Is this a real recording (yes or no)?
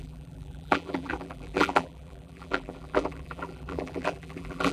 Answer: no